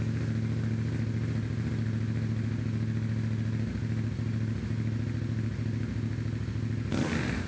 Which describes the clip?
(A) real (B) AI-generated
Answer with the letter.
A